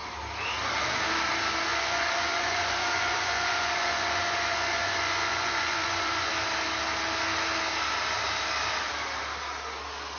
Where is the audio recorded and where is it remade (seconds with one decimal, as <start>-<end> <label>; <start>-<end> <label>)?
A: 0.0-1.7 recorded; 1.7-6.3 remade; 6.3-10.2 recorded